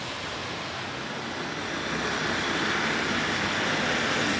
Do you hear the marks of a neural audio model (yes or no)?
no